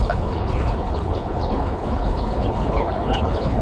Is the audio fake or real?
fake